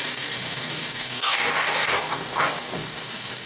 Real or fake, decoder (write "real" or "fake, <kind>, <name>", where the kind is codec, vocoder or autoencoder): fake, codec, DAC